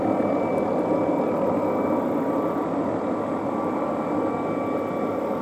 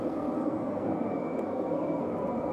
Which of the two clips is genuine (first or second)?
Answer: first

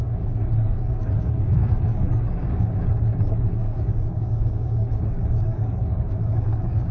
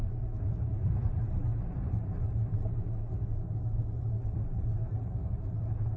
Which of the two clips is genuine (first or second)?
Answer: second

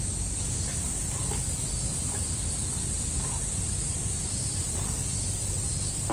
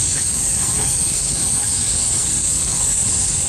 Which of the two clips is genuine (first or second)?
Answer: first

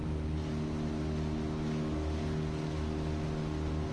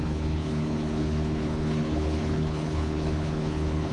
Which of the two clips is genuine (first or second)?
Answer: first